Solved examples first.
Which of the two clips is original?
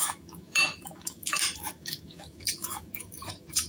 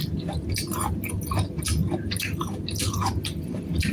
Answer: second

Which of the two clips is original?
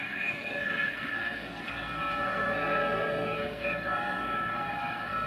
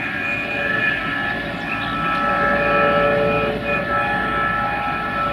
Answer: second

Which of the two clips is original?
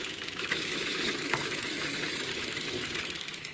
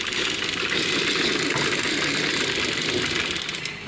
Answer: second